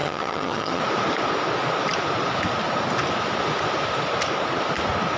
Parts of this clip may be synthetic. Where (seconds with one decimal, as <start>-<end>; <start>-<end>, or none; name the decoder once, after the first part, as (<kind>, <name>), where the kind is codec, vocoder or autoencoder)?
0.0-0.8 (vocoder, HiFi-GAN)